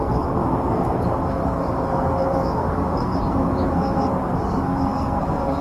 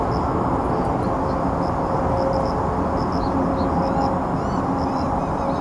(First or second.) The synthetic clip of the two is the first